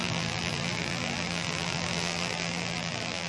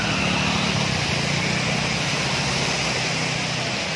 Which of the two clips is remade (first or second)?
first